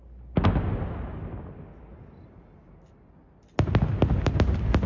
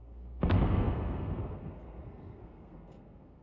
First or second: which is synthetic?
second